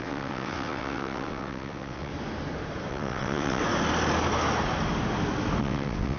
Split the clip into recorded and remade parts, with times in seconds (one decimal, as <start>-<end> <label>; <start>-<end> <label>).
0.0-2.1 remade; 2.1-2.9 recorded; 2.9-3.6 remade; 3.6-5.6 recorded; 5.6-6.2 remade